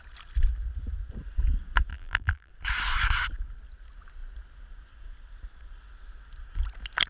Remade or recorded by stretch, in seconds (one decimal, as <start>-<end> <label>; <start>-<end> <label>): 0.0-1.9 recorded; 1.9-2.5 remade; 2.5-7.1 recorded